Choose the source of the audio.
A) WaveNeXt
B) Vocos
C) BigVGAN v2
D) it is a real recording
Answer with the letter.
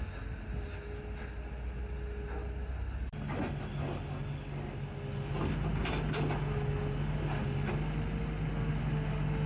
D